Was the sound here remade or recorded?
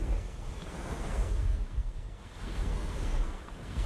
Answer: remade